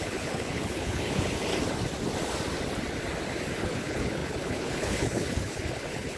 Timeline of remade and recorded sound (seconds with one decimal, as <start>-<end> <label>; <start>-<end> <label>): 0.0-1.5 remade; 1.5-3.6 recorded; 3.6-6.2 remade

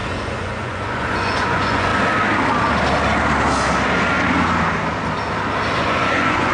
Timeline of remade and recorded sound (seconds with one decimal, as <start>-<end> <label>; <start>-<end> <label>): 0.0-1.9 remade; 1.9-5.8 recorded; 5.8-6.5 remade

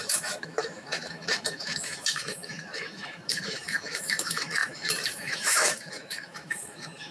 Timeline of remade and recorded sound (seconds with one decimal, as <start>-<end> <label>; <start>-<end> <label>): 0.0-7.1 remade

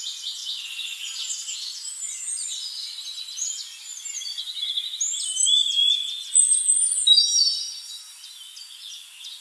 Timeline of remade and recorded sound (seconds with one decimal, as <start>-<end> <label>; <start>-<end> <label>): 0.0-9.4 recorded

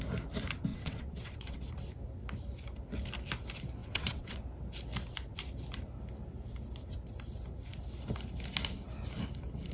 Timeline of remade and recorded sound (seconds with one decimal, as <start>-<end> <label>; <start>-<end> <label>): 0.0-0.7 recorded; 0.7-1.7 remade; 1.7-3.8 recorded; 3.8-4.4 remade; 4.4-9.7 recorded